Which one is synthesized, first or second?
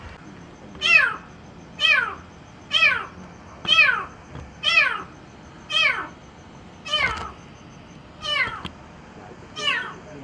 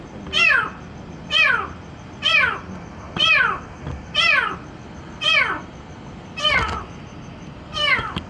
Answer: second